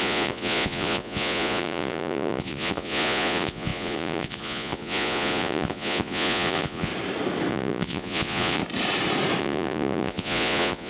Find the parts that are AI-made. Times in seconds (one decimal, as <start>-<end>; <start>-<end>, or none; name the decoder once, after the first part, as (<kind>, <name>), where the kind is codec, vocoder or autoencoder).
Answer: 0.0-6.9 (vocoder, Vocos); 7.5-8.6; 9.4-10.9